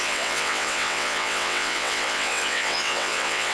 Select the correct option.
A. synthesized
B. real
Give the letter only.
A